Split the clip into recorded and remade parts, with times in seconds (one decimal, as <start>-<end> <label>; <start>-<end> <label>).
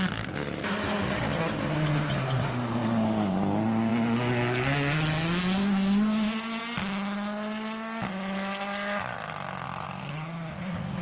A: 0.0-11.0 recorded